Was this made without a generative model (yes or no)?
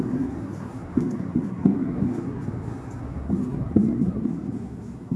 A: no